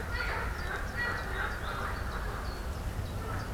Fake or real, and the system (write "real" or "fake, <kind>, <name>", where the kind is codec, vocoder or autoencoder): real